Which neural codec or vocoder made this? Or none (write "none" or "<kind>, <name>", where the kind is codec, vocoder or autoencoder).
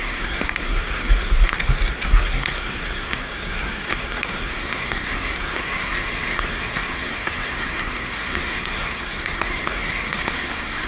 codec, SNAC